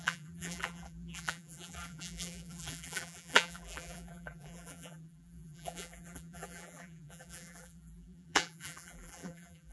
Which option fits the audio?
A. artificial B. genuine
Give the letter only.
A